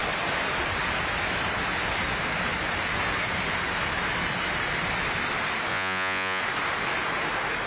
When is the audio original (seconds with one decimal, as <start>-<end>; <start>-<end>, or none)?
0.0-5.7; 6.4-7.7